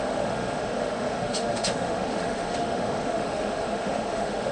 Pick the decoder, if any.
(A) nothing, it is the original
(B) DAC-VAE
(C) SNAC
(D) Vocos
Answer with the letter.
B